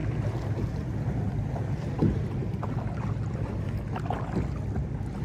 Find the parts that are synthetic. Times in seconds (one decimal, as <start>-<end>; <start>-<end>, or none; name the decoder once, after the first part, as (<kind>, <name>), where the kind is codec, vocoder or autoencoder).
0.0-3.1 (vocoder, BigVGAN v2)